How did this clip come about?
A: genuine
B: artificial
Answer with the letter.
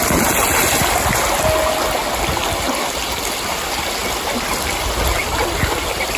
A